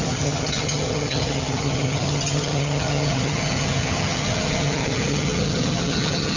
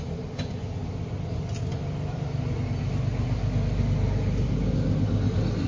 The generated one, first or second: first